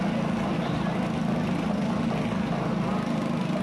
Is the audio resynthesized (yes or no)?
no